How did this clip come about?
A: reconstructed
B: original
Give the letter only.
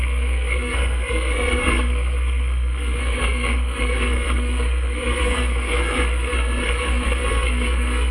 A